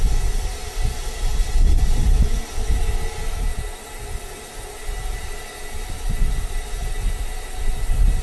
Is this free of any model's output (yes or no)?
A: yes